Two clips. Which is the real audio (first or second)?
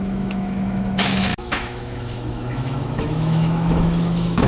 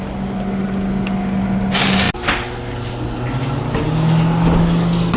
second